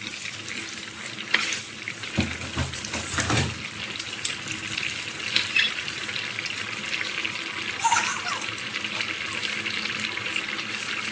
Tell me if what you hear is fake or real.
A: real